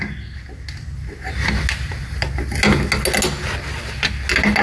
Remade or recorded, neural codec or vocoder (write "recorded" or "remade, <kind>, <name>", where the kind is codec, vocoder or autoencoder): recorded